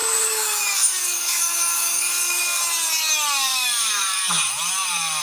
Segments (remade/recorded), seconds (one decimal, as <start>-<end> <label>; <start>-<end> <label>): 0.0-2.6 remade; 2.6-3.5 recorded; 3.5-4.3 remade; 4.3-5.2 recorded